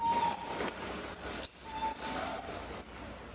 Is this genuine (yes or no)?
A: no